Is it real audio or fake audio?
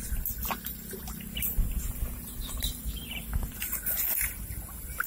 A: real